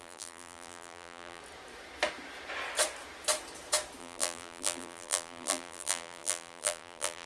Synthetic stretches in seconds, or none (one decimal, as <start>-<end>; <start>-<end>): 0.0-1.4; 4.0-7.3